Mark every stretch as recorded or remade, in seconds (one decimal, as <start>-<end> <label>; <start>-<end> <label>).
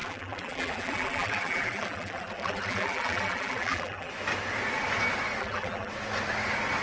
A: 0.0-4.1 remade; 4.1-5.4 recorded; 5.4-5.9 remade; 5.9-6.8 recorded